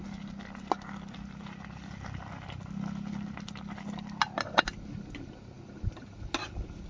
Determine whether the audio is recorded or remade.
recorded